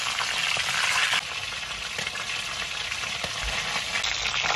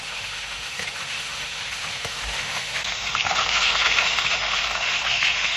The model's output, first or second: second